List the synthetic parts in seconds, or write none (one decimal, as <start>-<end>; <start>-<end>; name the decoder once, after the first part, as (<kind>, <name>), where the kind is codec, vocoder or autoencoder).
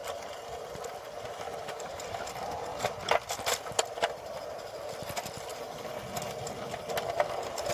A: none